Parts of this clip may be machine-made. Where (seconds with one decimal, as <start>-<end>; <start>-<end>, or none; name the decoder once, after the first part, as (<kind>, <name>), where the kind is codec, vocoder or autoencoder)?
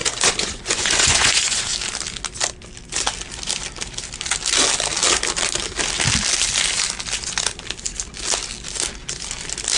0.0-1.6 (vocoder, Vocos)